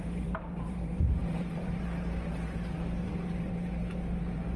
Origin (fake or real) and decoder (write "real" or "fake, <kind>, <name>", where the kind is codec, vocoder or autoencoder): fake, vocoder, BigVGAN v2